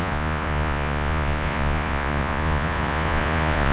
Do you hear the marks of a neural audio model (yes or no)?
yes